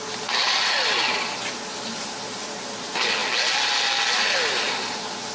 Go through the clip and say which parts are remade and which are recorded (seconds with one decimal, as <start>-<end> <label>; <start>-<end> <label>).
0.0-5.3 recorded